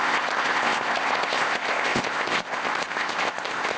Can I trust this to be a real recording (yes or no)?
no